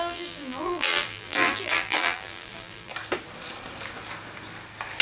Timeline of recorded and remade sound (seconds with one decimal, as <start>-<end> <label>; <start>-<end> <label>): 0.0-2.9 remade; 2.9-5.0 recorded